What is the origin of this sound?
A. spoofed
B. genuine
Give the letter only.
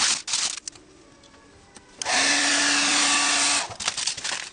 B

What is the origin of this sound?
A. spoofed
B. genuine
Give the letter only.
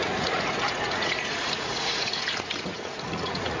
A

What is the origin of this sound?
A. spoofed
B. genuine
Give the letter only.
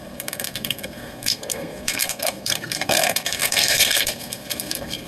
A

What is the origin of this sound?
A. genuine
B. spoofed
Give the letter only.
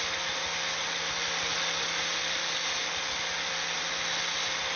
A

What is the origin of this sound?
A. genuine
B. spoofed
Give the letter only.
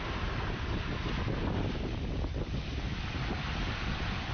A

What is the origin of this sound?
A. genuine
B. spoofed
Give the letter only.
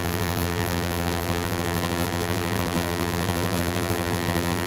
B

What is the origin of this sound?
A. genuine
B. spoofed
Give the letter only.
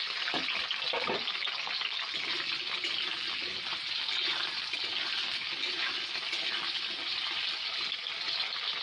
A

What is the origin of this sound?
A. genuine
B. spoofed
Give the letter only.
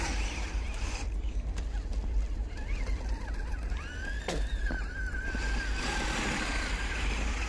A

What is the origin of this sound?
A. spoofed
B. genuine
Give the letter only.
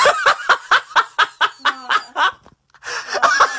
B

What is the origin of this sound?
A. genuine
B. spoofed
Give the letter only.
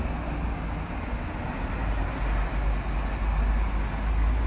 A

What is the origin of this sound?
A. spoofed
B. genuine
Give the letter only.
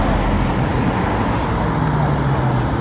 B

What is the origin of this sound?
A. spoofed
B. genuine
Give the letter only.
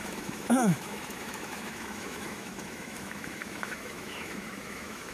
A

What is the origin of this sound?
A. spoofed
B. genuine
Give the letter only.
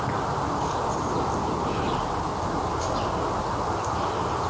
B